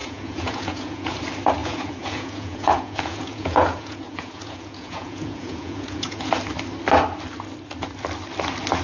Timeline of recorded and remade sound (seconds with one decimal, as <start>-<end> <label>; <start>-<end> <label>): 0.0-1.2 remade; 1.2-1.6 recorded; 1.6-6.3 remade; 6.3-8.8 recorded